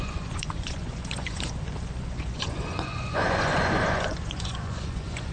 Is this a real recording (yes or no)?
no